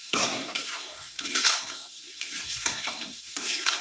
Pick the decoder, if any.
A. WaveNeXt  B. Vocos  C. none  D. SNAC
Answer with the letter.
D